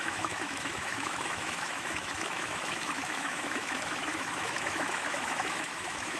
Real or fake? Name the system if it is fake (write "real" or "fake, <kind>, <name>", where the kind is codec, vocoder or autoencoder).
fake, autoencoder, DAC-VAE